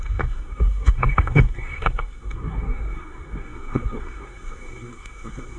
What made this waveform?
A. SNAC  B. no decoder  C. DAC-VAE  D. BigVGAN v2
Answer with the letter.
A